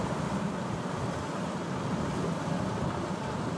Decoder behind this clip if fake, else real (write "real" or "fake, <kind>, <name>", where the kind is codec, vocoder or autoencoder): real